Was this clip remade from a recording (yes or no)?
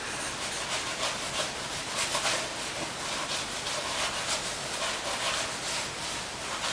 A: no